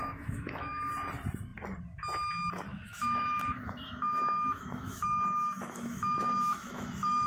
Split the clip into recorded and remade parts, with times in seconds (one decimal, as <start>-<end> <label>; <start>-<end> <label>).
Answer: 0.0-0.9 remade; 0.9-2.7 recorded; 2.7-7.3 remade